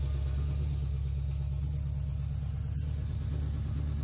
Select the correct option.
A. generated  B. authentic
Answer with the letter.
B